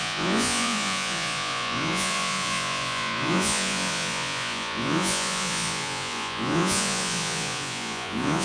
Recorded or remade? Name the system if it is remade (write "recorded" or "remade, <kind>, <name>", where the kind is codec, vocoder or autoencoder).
remade, vocoder, Vocos